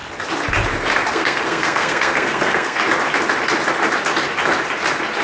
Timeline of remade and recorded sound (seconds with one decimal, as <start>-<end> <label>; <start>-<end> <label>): 0.0-1.1 recorded; 1.1-2.8 remade; 2.8-5.2 recorded